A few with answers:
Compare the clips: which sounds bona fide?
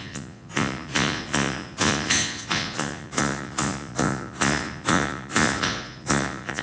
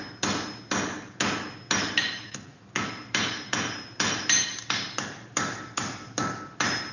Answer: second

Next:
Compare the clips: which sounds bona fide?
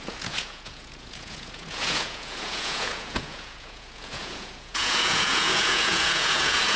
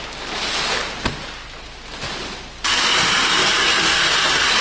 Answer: second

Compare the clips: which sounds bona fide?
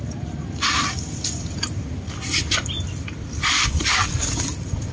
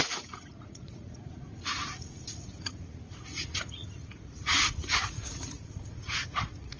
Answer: first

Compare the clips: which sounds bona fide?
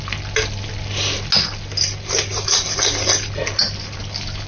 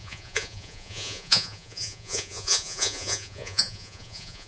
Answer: first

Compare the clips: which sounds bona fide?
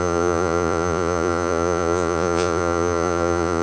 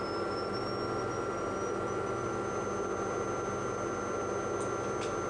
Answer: second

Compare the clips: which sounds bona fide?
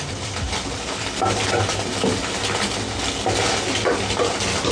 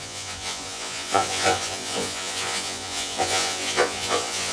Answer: first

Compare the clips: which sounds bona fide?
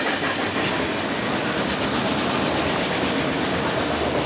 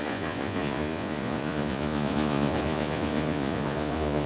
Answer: first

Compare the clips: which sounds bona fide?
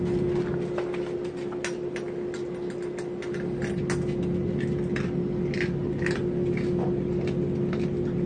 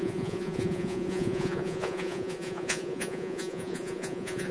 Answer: first